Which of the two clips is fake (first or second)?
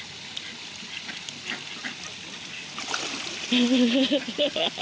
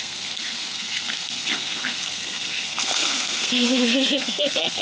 second